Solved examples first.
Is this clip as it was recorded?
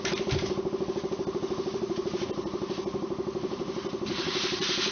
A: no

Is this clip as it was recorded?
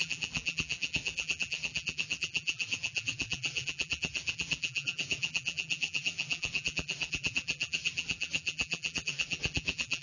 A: no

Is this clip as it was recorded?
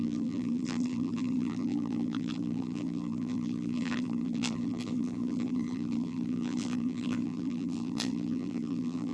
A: no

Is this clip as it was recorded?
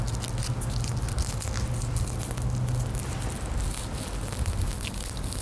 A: yes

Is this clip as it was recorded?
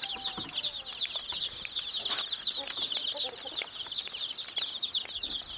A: yes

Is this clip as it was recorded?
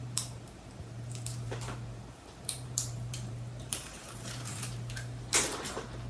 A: no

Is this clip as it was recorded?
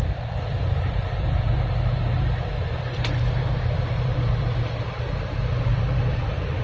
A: no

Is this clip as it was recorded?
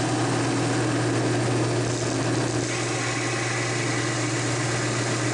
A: yes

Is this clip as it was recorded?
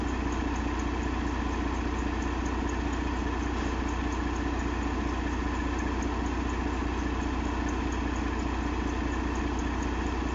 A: yes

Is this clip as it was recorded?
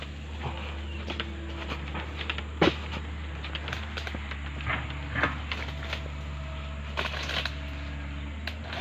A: yes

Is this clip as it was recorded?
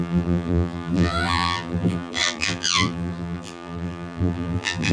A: no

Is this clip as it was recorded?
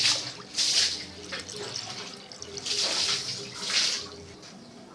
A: yes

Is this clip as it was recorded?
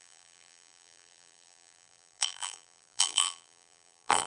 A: no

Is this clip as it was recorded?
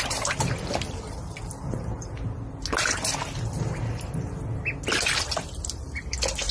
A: yes